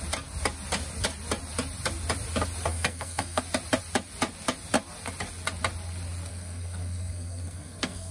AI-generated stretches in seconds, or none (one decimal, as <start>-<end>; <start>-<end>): 2.7-3.4; 6.3-8.1